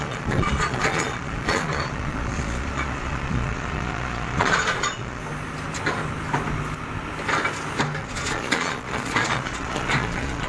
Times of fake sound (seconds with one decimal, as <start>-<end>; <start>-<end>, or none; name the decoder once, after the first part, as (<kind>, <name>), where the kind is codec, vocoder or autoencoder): 0.0-5.2 (vocoder, Vocos); 8.0-10.5